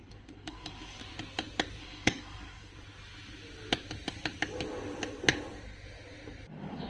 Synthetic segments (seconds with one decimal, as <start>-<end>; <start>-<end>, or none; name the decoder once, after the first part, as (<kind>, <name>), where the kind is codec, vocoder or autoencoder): 0.0-1.0 (codec, DAC); 1.8-2.7; 6.5-6.9